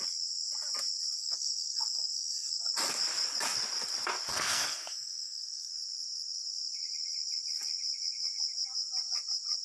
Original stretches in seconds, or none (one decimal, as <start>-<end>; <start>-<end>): 0.0-1.2; 2.7-4.3; 5.7-9.6